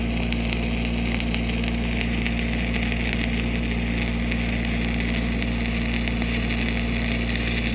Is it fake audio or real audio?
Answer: real